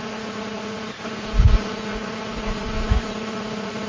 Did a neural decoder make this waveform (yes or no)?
yes